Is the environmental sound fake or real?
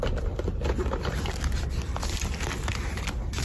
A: real